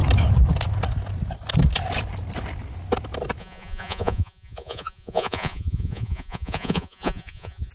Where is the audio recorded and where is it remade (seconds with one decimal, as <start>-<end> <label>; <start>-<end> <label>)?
0.0-3.4 recorded; 3.4-7.7 remade